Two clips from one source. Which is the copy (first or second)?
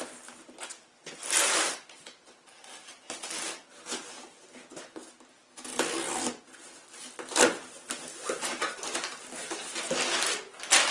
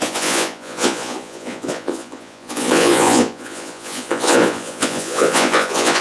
second